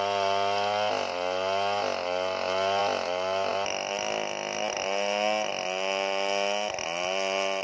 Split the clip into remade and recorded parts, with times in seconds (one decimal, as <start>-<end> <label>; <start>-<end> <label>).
0.0-7.6 recorded